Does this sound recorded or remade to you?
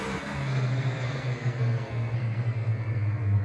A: remade